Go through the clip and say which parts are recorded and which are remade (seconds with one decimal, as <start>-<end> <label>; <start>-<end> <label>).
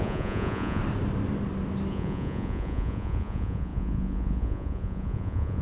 0.0-0.8 remade; 0.8-1.9 recorded; 1.9-5.6 remade